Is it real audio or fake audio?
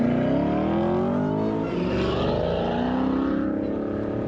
real